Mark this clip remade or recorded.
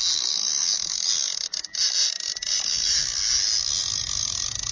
recorded